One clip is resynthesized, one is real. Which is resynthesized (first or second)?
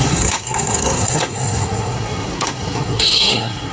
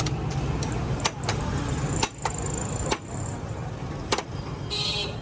first